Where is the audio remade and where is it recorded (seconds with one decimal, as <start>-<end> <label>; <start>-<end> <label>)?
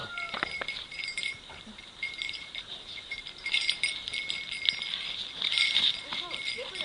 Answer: 0.0-3.9 remade; 3.9-6.8 recorded